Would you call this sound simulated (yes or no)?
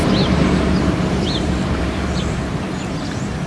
yes